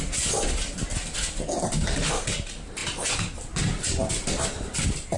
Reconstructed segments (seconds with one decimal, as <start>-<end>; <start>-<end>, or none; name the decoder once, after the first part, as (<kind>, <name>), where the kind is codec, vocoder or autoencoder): none